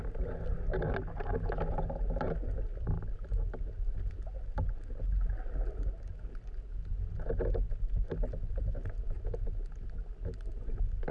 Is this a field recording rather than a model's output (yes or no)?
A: yes